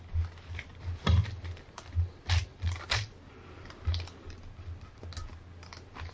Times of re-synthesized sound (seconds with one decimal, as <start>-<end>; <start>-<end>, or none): 0.7-4.4